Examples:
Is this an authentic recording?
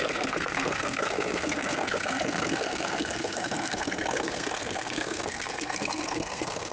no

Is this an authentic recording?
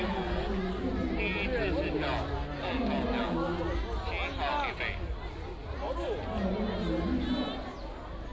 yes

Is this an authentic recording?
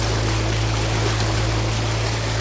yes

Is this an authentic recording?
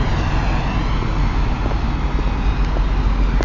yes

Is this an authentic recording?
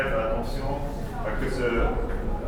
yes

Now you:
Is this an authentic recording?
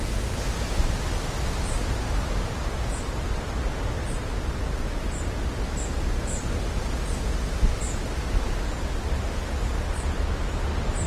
yes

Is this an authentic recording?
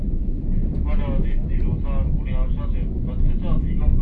yes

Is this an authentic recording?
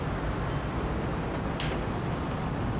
yes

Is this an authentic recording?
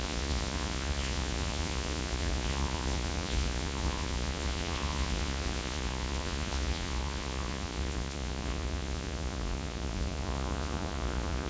no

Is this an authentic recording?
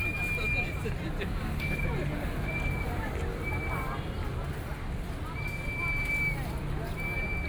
yes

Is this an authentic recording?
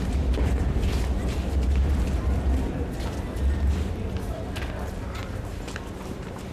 yes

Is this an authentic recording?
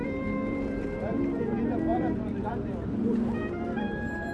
no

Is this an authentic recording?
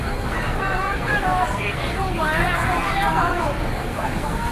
no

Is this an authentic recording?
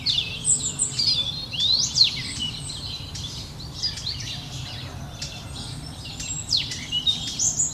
yes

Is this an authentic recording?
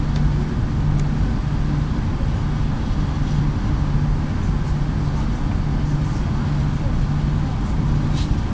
yes